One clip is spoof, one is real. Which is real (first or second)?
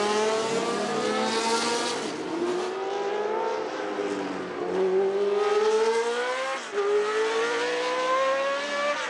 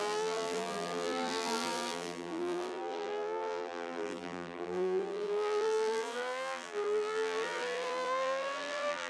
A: first